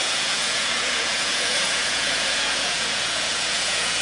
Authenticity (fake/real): fake